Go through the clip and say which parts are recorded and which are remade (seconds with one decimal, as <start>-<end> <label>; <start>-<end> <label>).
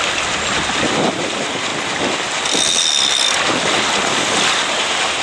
0.0-5.2 recorded